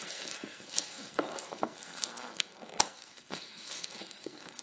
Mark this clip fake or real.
fake